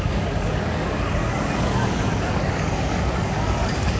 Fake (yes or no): yes